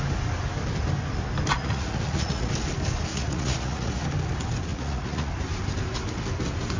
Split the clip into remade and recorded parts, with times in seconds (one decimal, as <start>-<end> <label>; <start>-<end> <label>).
0.0-1.6 recorded; 1.6-2.5 remade; 2.5-3.1 recorded; 3.1-4.0 remade; 4.0-4.7 recorded; 4.7-5.3 remade; 5.3-6.8 recorded